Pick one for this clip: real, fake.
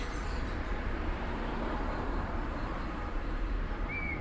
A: fake